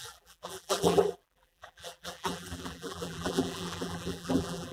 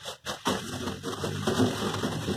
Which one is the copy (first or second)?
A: first